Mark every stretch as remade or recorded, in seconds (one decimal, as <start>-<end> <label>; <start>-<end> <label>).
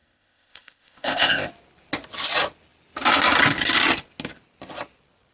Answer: 0.0-1.5 remade; 1.5-5.3 recorded